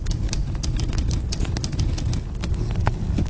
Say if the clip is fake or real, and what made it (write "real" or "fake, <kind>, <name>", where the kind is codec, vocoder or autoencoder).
real